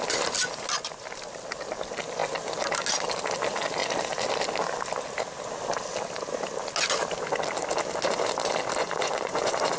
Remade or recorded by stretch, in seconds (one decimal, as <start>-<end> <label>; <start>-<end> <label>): 0.0-8.8 recorded; 8.8-9.8 remade